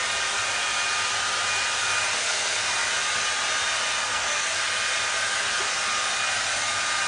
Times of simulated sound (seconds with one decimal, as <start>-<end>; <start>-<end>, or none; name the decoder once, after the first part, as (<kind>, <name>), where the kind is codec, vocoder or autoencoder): 2.2-2.7 (codec, SNAC); 4.0-4.6